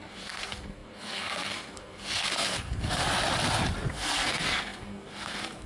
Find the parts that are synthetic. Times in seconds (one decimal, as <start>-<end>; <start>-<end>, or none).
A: 0.0-3.0; 3.9-5.7